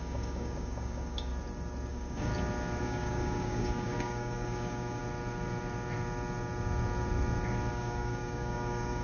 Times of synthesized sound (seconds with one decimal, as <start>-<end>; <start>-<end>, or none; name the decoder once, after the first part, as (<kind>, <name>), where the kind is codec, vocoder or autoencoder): 0.0-1.3 (codec, DAC); 1.9-2.3; 2.8-5.0; 7.7-9.0

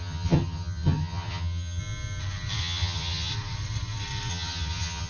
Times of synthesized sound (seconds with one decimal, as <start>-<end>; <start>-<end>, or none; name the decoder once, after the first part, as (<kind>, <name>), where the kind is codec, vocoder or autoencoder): 0.0-1.8 (vocoder, HiFi-GAN); 2.6-3.3; 4.3-5.1

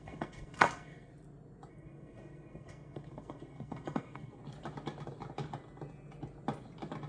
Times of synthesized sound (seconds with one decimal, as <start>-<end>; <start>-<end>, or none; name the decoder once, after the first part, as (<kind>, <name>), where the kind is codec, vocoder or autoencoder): 0.0-1.1 (codec, SNAC); 1.7-4.4

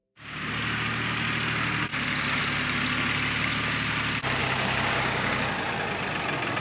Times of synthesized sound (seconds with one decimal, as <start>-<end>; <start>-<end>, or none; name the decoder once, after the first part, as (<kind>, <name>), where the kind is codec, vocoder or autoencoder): 0.0-0.5 (codec, DAC); 4.4-5.3